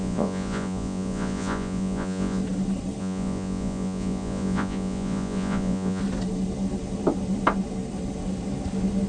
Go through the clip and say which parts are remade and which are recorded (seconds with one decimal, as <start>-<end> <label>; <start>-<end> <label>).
0.0-2.4 remade; 2.4-3.0 recorded; 3.0-6.0 remade; 6.0-9.1 recorded